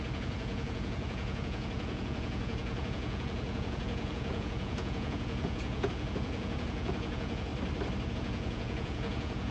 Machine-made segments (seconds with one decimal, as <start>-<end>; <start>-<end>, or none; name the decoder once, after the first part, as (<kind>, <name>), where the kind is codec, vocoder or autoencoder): 0.0-7.5 (vocoder, Vocos); 8.1-9.5